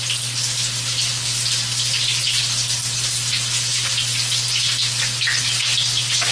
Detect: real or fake real